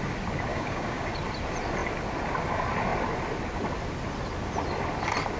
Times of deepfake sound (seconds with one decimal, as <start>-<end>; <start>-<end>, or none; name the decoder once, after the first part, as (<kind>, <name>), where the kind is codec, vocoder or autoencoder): 0.5-1.1 (codec, DAC)